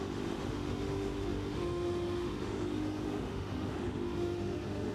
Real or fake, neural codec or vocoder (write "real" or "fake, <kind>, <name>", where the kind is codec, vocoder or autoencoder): fake, autoencoder, DAC-VAE